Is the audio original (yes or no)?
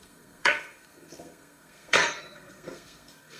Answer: no